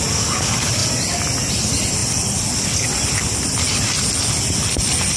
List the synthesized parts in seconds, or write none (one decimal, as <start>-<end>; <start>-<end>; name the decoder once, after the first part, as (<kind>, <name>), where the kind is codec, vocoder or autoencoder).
none